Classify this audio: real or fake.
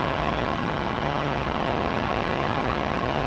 fake